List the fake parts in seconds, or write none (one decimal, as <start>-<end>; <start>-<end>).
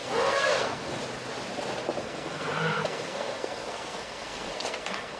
0.0-1.0; 2.0-5.2